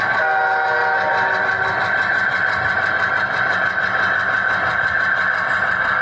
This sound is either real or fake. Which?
real